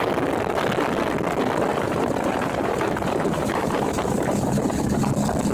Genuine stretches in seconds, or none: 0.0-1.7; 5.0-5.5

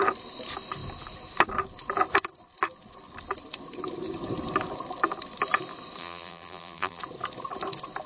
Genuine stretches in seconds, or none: 0.0-6.0; 7.0-8.1

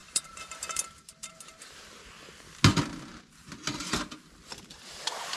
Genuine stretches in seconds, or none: 2.0-5.4

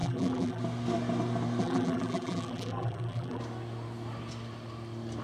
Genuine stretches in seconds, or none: 0.6-1.6; 3.4-5.2

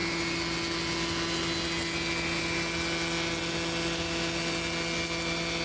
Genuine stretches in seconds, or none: 0.0-5.6